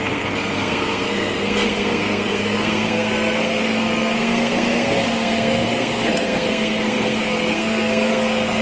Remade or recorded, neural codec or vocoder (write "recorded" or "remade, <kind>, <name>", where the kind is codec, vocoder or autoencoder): remade, codec, SNAC